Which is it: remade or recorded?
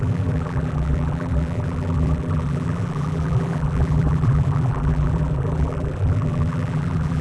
remade